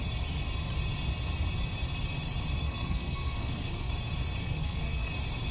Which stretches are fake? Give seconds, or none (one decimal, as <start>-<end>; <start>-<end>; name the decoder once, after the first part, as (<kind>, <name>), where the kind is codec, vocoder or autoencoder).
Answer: 2.6-3.9 (codec, SNAC); 4.4-5.1